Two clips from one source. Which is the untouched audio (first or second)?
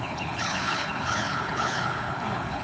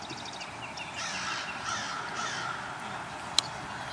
second